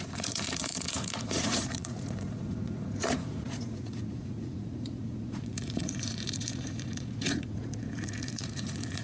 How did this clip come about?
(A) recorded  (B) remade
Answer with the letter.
B